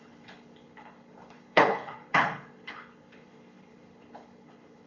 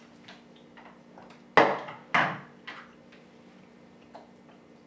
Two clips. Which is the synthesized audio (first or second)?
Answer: first